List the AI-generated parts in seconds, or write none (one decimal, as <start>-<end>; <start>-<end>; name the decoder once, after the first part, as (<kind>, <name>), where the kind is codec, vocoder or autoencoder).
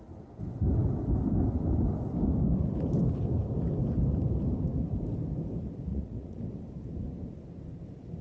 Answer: 5.9-6.4 (vocoder, Vocos)